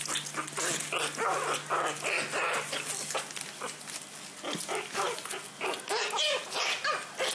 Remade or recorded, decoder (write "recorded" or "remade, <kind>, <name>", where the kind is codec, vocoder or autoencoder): recorded